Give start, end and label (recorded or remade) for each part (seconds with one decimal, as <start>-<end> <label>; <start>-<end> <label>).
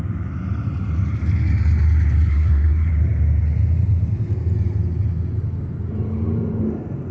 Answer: 0.0-2.3 recorded; 2.3-2.9 remade; 2.9-7.1 recorded